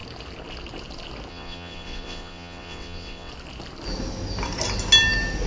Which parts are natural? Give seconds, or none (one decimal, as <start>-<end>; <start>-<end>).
0.0-1.3; 3.3-5.5